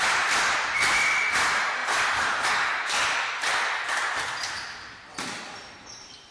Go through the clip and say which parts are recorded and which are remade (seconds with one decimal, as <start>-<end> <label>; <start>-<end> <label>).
0.0-6.3 recorded